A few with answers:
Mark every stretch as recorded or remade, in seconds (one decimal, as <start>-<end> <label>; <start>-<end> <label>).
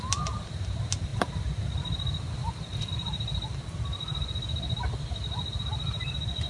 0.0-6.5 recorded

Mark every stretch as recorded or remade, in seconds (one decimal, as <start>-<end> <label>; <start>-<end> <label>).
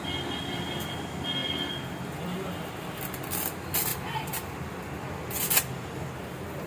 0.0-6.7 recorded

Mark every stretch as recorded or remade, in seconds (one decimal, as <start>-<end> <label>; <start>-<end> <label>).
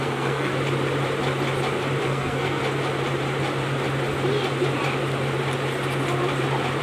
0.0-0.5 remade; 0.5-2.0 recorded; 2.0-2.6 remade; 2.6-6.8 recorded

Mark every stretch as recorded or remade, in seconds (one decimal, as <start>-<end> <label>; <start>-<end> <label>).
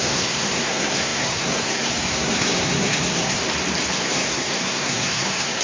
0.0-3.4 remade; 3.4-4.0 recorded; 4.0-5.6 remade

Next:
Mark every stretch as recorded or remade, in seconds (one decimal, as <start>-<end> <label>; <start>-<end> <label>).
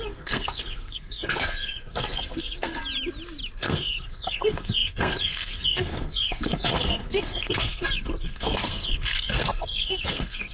0.0-2.8 remade; 2.8-3.6 recorded; 3.6-10.5 remade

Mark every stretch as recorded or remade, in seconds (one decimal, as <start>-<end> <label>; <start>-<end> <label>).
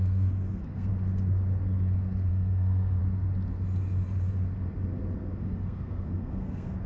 0.0-0.9 remade; 0.9-2.3 recorded; 2.3-3.0 remade; 3.0-5.4 recorded; 5.4-6.9 remade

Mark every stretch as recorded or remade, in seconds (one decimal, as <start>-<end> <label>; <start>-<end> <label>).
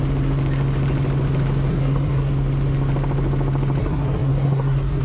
0.0-1.7 recorded; 1.7-2.3 remade; 2.3-3.8 recorded; 3.8-5.0 remade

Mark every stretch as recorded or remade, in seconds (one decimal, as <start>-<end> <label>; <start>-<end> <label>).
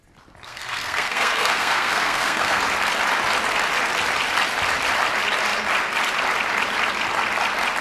0.0-0.4 recorded; 0.4-2.6 remade; 2.6-7.8 recorded